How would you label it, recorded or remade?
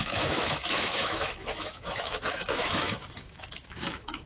remade